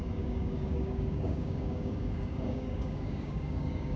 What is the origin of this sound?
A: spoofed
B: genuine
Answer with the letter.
A